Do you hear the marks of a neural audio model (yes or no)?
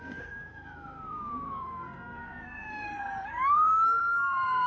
yes